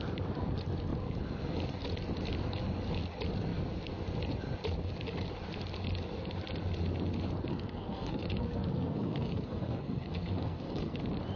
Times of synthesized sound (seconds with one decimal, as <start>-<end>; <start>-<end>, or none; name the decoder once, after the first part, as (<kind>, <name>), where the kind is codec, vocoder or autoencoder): 7.5-11.0 (codec, SNAC)